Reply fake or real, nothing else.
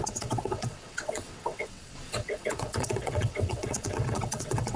fake